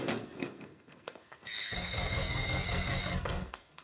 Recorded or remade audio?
remade